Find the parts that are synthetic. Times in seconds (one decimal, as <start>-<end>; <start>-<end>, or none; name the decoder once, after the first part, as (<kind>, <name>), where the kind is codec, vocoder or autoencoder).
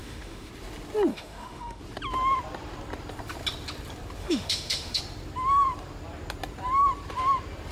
0.0-0.5 (autoencoder, DAC-VAE); 1.1-1.8; 4.2-5.0